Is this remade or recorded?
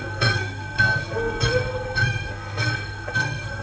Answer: remade